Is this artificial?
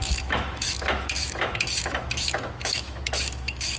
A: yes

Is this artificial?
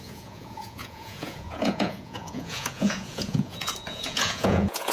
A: yes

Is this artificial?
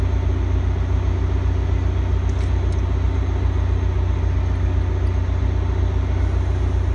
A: no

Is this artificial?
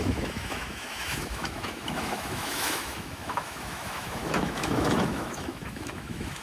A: yes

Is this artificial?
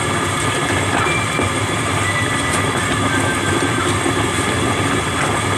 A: no